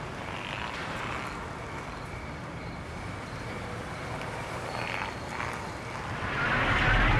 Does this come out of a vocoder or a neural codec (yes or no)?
no